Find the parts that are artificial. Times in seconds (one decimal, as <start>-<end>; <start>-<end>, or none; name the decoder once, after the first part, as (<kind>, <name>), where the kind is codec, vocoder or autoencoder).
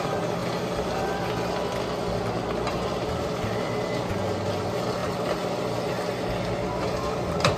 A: none